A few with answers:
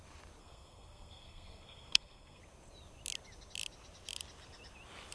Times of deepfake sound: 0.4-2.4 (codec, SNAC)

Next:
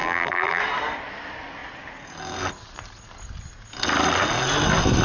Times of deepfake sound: 0.0-0.6 (vocoder, BigVGAN v2)

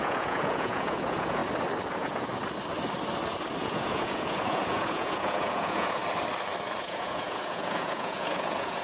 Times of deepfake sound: 0.0-1.4 (vocoder, Vocos); 1.9-2.3; 3.6-6.0; 6.8-8.8

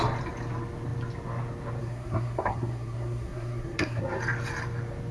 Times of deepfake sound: 1.8-4.0 (codec, SNAC)

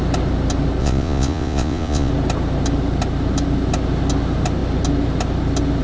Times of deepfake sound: 0.8-2.1 (vocoder, Vocos)